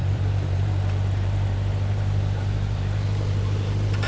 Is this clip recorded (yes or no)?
no